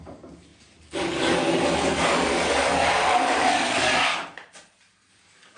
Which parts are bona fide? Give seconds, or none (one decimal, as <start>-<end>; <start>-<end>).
4.1-5.1